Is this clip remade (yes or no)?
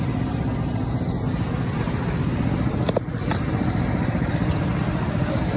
no